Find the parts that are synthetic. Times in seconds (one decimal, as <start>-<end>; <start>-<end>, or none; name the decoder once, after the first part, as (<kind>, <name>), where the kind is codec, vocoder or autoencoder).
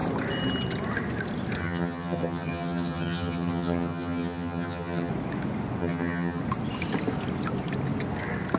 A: 1.6-5.1 (vocoder, HiFi-GAN); 5.8-6.4